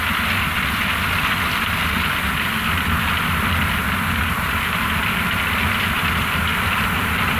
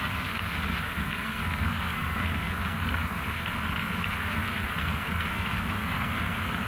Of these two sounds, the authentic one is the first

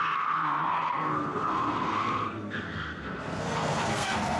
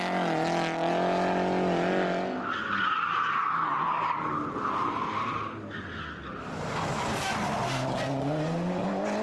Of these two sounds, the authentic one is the second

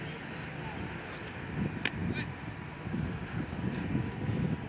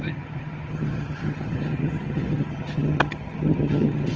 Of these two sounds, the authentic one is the first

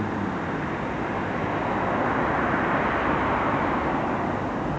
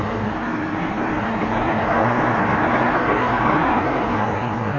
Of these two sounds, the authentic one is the first